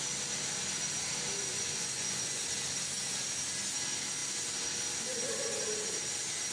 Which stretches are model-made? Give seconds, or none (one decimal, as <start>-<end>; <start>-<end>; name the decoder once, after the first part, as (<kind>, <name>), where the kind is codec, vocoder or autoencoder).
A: 1.5-2.4 (vocoder, Vocos)